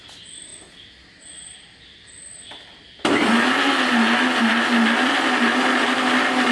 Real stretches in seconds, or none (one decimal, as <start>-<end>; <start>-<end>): 0.0-6.5

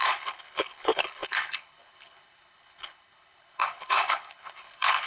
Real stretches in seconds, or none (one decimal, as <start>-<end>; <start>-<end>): none

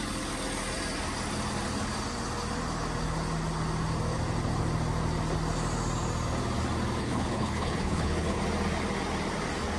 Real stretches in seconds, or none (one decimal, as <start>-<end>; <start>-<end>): 0.0-7.0; 8.4-9.8

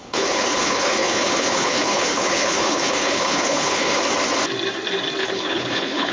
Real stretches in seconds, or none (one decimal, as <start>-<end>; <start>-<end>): 4.0-5.2

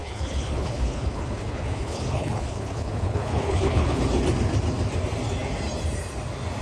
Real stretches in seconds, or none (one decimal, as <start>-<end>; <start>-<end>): 4.0-6.6

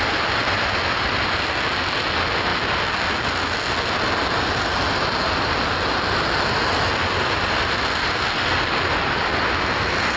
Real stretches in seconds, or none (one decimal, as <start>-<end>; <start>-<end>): 0.0-10.2